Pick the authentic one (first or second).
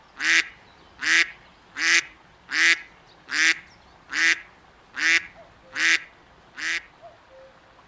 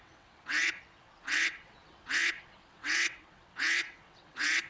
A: first